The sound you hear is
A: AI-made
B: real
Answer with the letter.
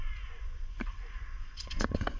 A